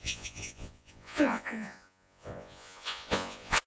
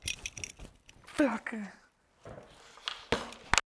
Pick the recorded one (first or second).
second